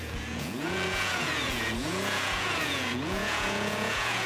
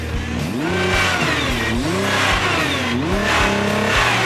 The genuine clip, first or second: second